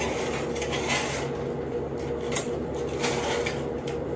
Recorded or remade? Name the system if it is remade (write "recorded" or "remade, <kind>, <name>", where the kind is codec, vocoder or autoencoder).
recorded